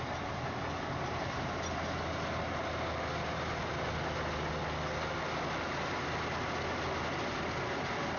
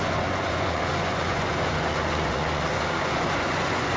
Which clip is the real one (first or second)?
first